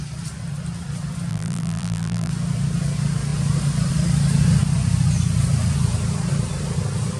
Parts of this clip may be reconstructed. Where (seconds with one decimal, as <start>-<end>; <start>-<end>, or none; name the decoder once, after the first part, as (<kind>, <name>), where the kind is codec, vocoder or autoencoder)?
1.3-2.3 (vocoder, BigVGAN v2)

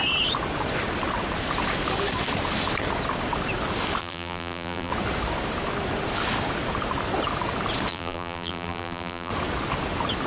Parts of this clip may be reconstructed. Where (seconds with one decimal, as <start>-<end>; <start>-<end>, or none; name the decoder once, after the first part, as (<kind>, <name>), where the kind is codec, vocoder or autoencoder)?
4.0-4.9 (vocoder, BigVGAN v2); 7.9-9.3

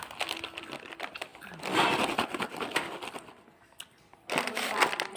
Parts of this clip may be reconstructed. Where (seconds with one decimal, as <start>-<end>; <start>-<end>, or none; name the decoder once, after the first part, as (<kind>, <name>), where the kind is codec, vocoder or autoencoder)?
none

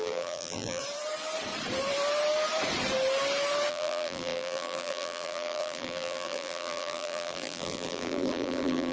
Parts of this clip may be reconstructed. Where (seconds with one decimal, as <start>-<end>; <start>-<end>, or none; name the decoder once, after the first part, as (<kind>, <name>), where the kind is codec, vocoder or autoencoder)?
0.0-0.8 (vocoder, BigVGAN v2); 3.7-8.9

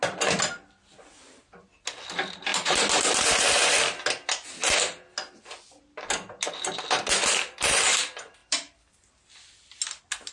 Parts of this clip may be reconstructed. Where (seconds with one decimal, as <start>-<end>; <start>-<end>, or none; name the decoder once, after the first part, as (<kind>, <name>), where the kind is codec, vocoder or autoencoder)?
8.4-9.1 (vocoder, BigVGAN v2)

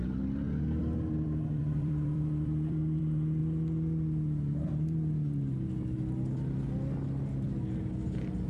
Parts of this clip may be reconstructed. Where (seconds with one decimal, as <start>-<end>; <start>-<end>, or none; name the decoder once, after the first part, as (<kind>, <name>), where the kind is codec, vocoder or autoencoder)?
1.6-3.0 (vocoder, BigVGAN v2)

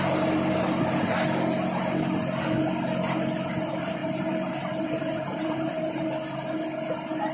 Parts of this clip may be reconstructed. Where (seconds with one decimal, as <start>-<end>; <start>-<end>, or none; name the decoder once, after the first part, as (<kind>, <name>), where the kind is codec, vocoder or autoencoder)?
4.0-5.8 (vocoder, BigVGAN v2)